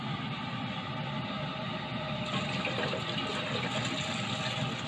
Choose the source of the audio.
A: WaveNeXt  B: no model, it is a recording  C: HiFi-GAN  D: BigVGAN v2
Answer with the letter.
B